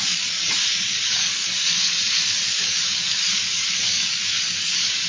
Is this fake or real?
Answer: fake